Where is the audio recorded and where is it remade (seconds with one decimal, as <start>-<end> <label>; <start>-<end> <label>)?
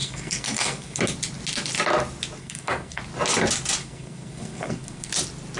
0.0-1.0 remade; 1.0-2.4 recorded; 2.4-3.0 remade; 3.0-3.8 recorded; 3.8-5.1 remade; 5.1-5.6 recorded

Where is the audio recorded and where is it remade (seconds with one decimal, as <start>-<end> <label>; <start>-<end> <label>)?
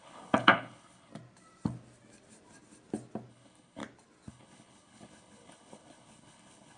0.0-1.1 remade; 1.1-3.3 recorded; 3.3-3.8 remade; 3.8-4.3 recorded; 4.3-6.8 remade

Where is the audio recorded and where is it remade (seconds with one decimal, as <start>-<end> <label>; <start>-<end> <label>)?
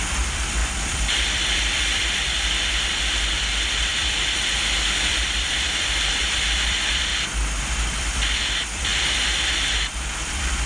0.0-7.1 remade; 7.1-7.6 recorded; 7.6-10.7 remade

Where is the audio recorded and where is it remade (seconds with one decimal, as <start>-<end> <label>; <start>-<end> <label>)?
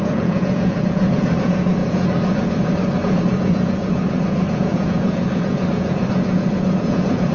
0.0-7.3 remade